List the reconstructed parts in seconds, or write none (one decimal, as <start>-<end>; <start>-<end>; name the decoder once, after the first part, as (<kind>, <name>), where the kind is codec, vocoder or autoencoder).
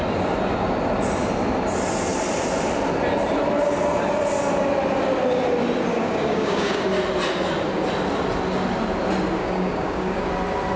5.9-6.9 (codec, DAC); 9.4-10.3